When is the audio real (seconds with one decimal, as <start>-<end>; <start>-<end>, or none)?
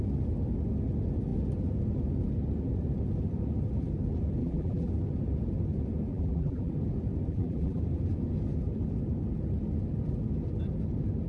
0.0-4.4; 4.9-6.1; 6.7-7.3; 7.8-11.3